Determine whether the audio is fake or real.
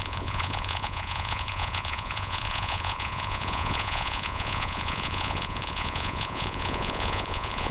fake